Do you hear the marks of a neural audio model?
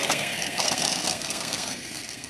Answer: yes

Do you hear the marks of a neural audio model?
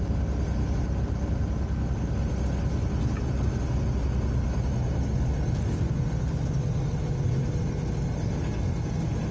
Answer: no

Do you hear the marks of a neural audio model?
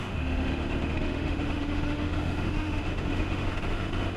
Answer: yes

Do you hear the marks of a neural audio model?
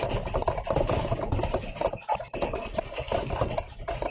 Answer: no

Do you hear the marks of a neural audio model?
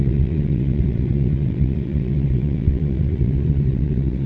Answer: yes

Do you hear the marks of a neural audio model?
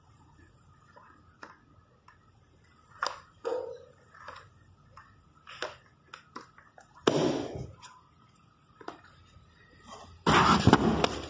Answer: no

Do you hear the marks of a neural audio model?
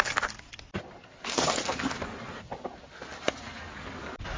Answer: no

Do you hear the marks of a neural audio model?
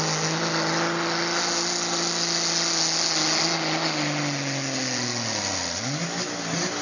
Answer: no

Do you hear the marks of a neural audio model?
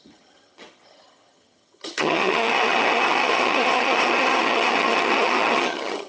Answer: yes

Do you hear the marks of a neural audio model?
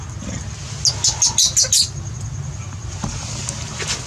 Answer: no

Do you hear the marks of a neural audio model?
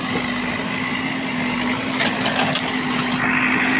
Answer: no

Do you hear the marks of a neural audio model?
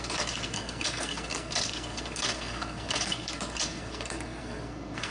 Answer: yes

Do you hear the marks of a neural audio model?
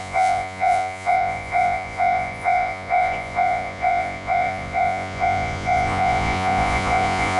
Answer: yes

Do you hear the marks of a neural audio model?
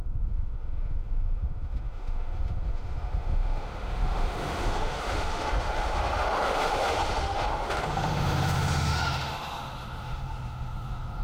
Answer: yes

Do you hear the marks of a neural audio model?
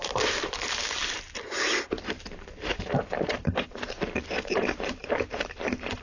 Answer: yes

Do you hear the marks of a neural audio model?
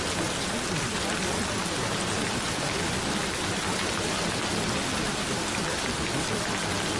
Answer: no